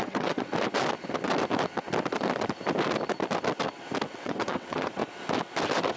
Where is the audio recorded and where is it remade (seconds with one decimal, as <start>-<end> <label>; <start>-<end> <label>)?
0.0-0.5 remade; 0.5-4.1 recorded; 4.1-5.0 remade; 5.0-6.0 recorded